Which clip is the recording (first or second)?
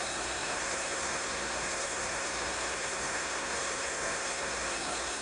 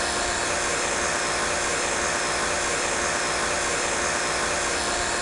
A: second